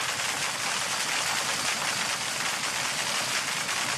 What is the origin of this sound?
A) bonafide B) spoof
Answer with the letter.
A